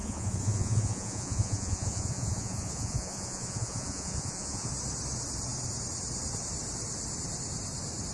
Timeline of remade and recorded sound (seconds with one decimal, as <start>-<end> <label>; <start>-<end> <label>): 0.0-4.7 remade; 4.7-8.1 recorded